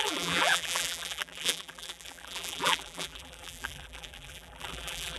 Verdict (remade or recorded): remade